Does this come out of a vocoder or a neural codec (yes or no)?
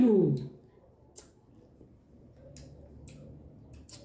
no